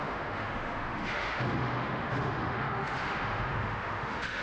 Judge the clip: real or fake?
fake